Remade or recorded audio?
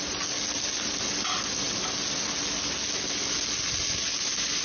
recorded